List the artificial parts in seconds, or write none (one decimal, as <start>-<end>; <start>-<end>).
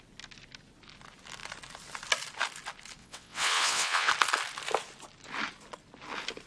3.0-4.1